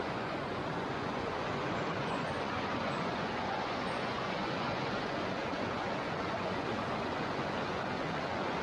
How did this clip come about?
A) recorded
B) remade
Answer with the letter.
B